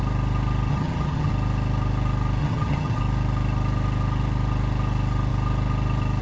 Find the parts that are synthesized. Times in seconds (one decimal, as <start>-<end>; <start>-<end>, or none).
0.7-1.3; 2.4-3.0